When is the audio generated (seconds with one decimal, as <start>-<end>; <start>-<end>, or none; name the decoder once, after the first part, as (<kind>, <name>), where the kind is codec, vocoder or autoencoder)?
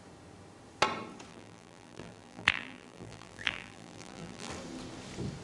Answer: 1.3-4.5 (vocoder, BigVGAN v2)